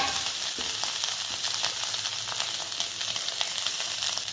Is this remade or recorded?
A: recorded